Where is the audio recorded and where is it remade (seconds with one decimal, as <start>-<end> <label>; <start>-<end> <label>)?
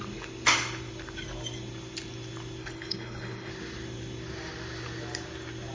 0.0-2.6 recorded; 2.6-3.5 remade; 3.5-5.7 recorded